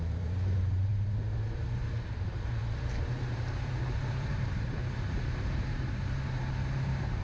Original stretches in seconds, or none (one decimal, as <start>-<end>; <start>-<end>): 0.9-1.4